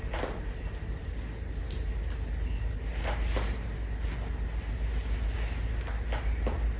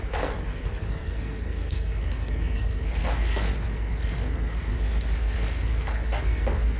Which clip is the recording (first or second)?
first